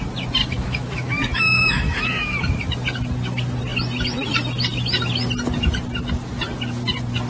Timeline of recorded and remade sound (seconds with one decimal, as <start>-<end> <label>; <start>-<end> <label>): 0.0-0.4 recorded; 0.4-2.5 remade; 2.5-7.3 recorded